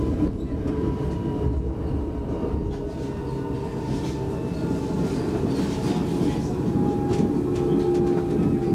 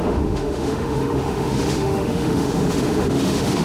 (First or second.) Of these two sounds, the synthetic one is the second